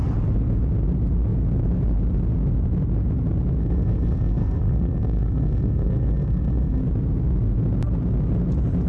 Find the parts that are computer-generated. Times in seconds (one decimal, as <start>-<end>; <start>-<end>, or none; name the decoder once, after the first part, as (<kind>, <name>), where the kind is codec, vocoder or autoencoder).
3.6-6.8 (codec, SNAC)